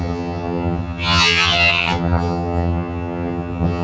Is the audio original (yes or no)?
no